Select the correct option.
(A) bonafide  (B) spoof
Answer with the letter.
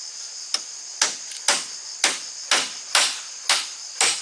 A